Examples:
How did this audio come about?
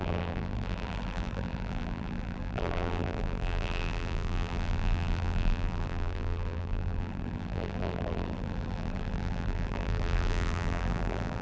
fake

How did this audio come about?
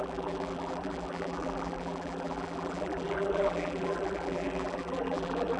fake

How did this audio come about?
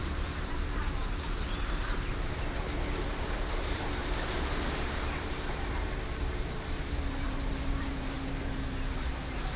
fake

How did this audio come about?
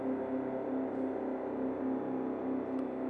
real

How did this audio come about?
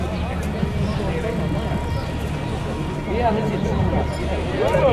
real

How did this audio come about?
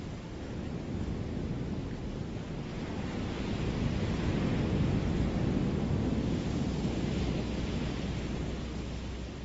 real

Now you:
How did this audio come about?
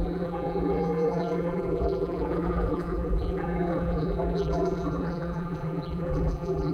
fake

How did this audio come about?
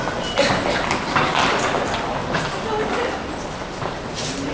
real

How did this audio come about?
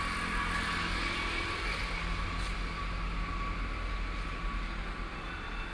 real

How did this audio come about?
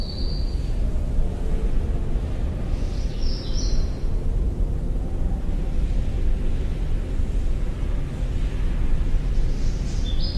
real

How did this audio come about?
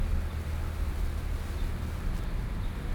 real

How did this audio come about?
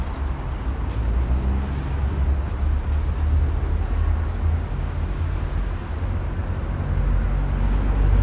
real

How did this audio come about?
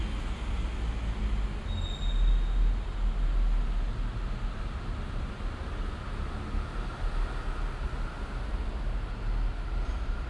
real